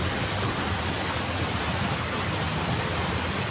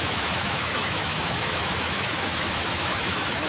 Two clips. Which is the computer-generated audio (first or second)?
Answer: second